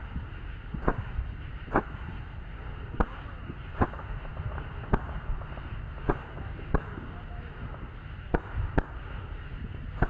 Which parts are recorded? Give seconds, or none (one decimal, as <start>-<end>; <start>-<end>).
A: 0.0-10.1